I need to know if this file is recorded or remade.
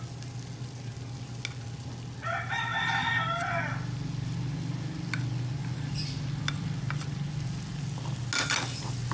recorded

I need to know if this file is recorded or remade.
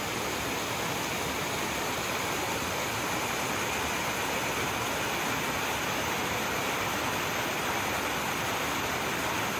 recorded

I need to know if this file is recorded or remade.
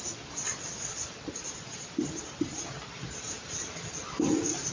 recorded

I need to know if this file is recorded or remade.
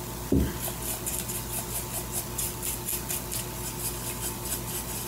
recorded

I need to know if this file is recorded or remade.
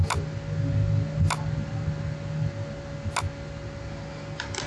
recorded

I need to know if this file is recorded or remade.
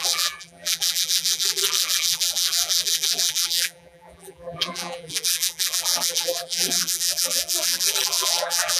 remade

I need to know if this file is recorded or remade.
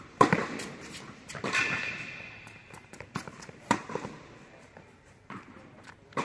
remade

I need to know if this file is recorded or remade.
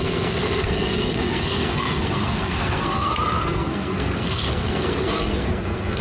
remade